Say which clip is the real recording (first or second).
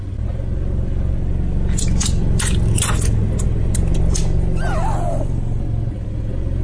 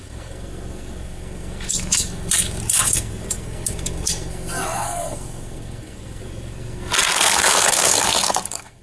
first